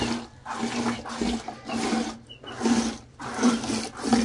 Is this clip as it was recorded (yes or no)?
yes